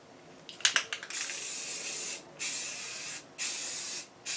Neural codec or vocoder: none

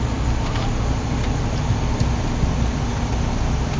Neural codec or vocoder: none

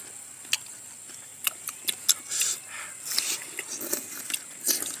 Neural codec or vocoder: none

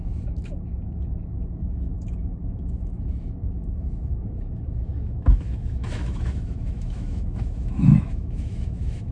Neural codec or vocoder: autoencoder, DAC-VAE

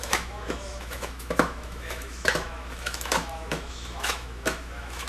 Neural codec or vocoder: autoencoder, DAC-VAE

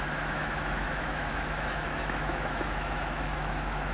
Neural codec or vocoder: autoencoder, DAC-VAE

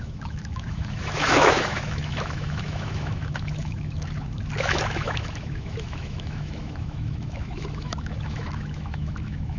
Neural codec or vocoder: autoencoder, DAC-VAE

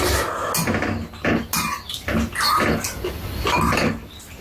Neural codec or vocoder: none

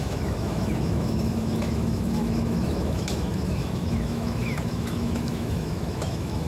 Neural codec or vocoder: autoencoder, DAC-VAE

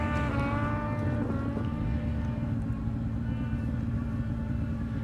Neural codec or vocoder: none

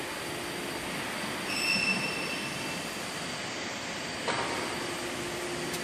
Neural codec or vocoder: none